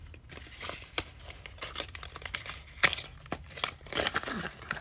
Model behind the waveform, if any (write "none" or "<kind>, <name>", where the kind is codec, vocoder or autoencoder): none